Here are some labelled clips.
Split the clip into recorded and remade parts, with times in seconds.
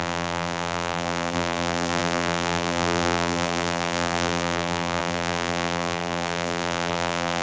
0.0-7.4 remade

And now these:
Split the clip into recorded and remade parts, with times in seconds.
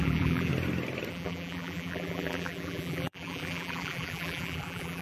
0.0-0.5 remade; 0.5-1.1 recorded; 1.1-5.0 remade